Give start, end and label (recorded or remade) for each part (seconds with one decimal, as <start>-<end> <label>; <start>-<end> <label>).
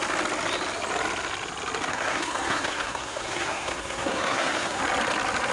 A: 0.0-1.9 recorded; 1.9-4.8 remade; 4.8-5.5 recorded